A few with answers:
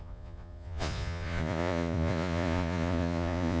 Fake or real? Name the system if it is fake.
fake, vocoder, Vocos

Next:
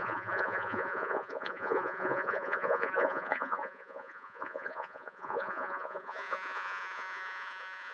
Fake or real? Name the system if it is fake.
fake, vocoder, Vocos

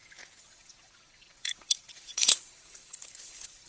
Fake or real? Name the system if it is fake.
fake, vocoder, Vocos